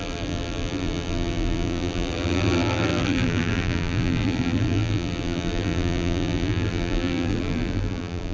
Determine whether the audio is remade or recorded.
remade